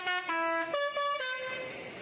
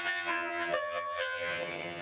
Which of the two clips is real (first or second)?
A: first